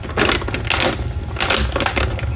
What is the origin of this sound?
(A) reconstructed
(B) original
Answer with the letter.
B